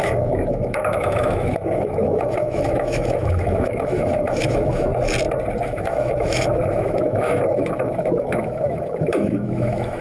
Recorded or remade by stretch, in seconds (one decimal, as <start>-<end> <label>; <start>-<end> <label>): 0.0-4.9 remade; 4.9-5.6 recorded; 5.6-10.0 remade